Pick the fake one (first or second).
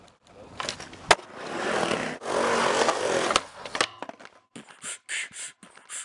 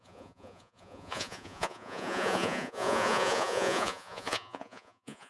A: second